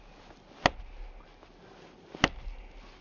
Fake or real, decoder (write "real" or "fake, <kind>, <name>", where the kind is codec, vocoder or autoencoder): real